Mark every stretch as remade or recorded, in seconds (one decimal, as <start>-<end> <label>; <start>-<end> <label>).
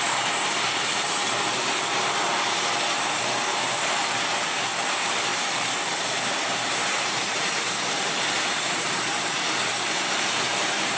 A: 0.0-9.7 remade; 9.7-10.6 recorded; 10.6-11.0 remade